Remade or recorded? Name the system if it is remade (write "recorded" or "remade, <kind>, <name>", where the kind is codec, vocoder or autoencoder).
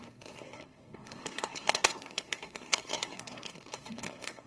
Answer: remade, codec, SNAC